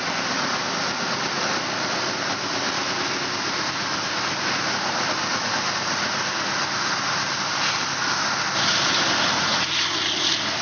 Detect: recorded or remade recorded